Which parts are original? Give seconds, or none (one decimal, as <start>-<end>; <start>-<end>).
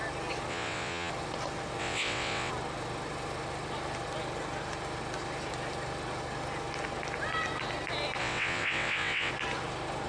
0.0-0.5; 1.1-1.8; 2.5-8.2; 9.3-10.1